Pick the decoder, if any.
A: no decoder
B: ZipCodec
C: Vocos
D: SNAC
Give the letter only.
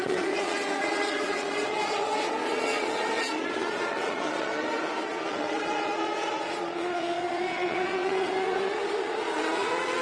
C